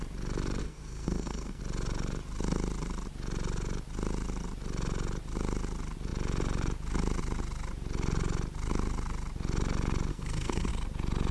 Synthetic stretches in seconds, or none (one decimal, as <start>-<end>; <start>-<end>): 0.6-1.6; 10.1-10.7